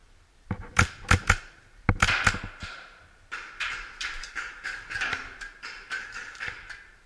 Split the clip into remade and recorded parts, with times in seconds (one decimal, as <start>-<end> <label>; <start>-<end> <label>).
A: 0.0-4.2 recorded; 4.2-5.1 remade; 5.1-6.0 recorded; 6.0-6.5 remade; 6.5-7.1 recorded